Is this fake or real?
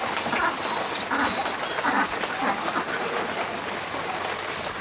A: real